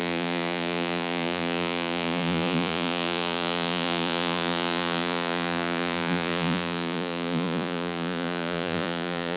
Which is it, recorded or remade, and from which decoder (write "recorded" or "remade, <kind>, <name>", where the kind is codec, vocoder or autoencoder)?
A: remade, vocoder, Vocos